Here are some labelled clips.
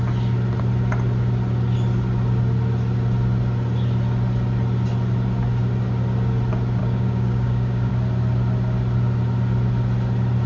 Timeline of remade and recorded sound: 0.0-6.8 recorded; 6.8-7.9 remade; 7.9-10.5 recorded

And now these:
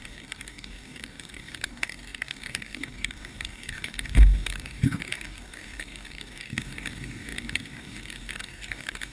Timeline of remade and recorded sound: 0.0-9.1 remade

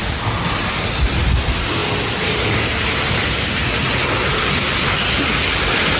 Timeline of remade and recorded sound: 0.0-6.0 recorded

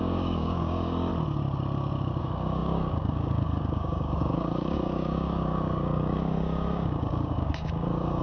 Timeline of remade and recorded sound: 0.0-1.1 remade; 1.1-2.2 recorded; 2.2-8.2 remade

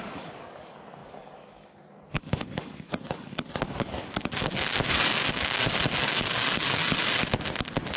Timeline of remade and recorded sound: 0.0-6.8 remade; 6.8-8.0 recorded

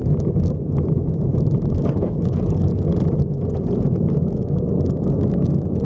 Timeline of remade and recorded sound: 0.0-1.7 recorded; 1.7-2.7 remade; 2.7-4.1 recorded; 4.1-5.8 remade